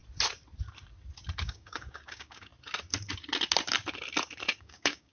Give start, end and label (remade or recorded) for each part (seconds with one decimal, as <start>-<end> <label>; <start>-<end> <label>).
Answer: 0.0-1.4 recorded; 1.4-2.5 remade; 2.5-4.6 recorded; 4.6-5.1 remade